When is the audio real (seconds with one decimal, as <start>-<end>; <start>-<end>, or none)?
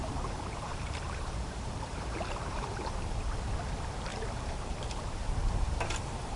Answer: 2.7-4.1; 6.0-6.4